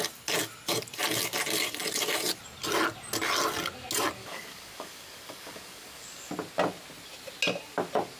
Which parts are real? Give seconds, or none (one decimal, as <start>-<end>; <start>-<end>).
0.0-4.2; 6.3-8.2